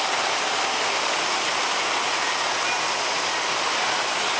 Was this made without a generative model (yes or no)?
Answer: yes